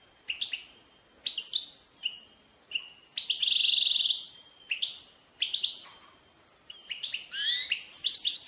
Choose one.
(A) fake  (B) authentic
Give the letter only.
B